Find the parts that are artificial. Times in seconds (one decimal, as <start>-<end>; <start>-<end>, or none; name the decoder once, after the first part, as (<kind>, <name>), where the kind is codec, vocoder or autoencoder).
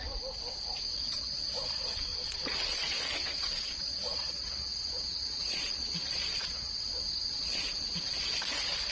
2.1-6.8 (vocoder, Vocos)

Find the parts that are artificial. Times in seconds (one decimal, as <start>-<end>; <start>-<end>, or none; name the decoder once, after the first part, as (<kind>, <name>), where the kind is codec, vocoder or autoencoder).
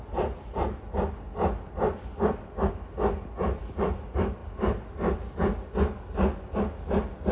none